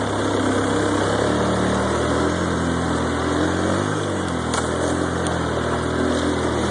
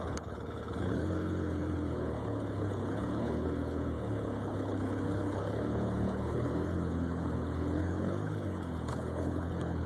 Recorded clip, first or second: first